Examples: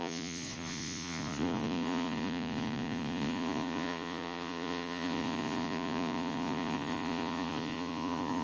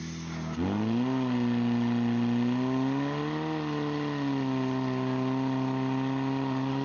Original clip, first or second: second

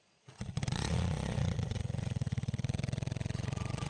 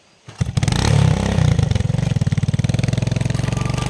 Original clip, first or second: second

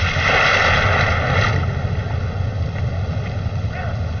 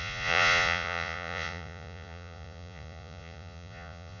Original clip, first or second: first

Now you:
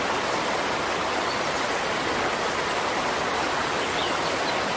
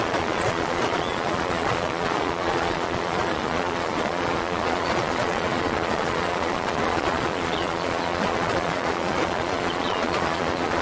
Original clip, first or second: first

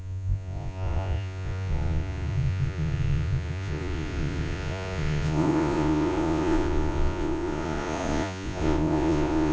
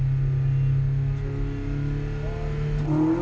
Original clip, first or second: second